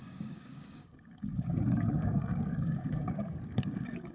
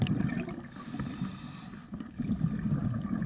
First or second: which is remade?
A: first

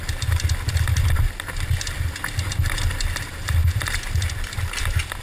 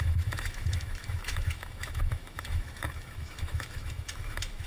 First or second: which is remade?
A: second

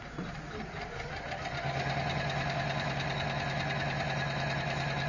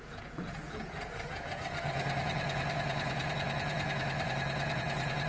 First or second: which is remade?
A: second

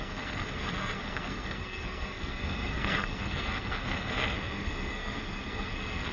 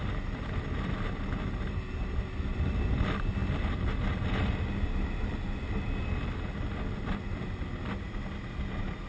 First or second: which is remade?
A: first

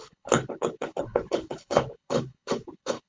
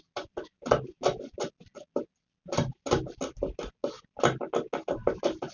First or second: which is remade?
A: first